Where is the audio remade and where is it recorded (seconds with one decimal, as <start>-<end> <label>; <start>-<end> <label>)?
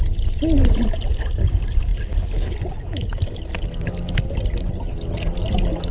0.0-5.9 recorded